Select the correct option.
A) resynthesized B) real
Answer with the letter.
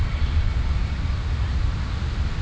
B